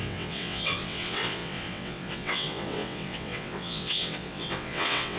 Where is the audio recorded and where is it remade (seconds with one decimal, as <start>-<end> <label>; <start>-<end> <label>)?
0.0-5.2 remade